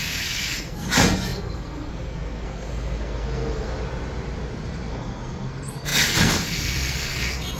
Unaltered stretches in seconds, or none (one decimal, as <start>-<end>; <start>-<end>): 3.7-4.9